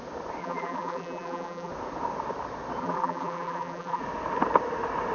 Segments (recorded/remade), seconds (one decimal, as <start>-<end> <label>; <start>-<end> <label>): 0.0-0.4 recorded; 0.4-1.7 remade; 1.7-2.8 recorded; 2.8-4.0 remade; 4.0-5.1 recorded